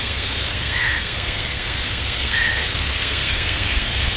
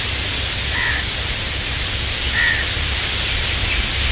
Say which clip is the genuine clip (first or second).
second